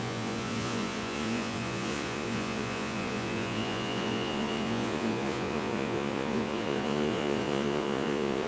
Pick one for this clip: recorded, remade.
remade